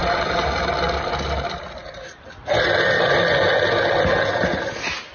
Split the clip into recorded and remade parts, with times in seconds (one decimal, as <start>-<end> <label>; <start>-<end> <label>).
0.0-5.1 recorded